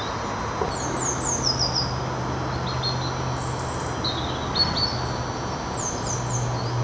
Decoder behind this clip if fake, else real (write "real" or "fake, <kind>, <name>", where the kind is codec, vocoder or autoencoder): real